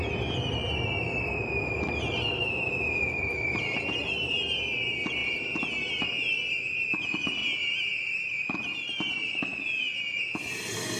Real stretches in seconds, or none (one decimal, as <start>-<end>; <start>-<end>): 5.2-6.5; 7.4-8.0; 9.9-11.0